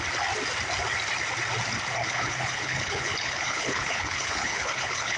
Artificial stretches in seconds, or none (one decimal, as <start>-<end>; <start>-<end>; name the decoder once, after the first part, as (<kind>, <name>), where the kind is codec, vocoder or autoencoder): 2.0-5.2 (codec, HILCodec)